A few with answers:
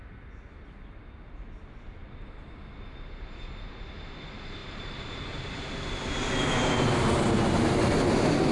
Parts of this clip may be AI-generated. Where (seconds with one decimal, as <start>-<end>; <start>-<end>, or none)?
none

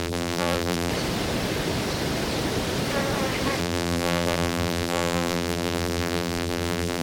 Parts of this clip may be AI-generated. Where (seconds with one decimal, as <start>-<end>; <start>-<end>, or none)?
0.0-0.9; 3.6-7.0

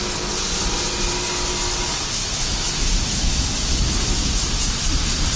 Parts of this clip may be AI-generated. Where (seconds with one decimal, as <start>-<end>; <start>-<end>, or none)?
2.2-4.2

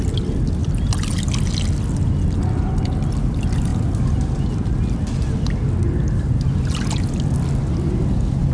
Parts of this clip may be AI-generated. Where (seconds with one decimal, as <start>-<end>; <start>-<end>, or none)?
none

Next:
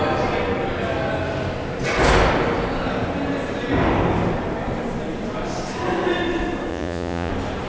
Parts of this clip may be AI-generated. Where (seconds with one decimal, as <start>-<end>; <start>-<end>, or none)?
6.7-7.3

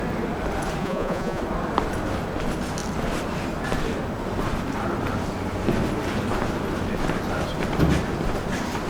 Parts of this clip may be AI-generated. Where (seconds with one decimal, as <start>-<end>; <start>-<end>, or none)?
0.8-1.4